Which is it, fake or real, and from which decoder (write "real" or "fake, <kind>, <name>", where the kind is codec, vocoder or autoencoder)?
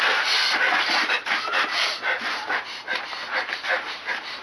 real